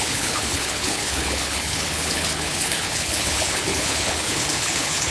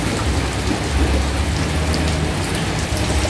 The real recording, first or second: second